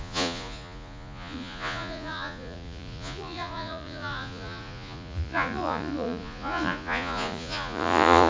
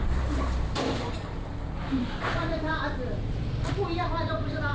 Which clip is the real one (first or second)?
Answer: second